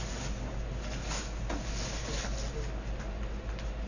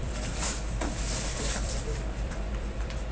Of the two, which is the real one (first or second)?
first